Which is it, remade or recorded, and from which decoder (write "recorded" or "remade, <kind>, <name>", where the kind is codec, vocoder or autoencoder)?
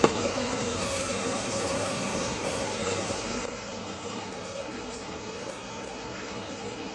remade, codec, SNAC